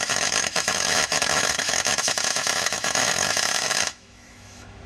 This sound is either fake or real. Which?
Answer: fake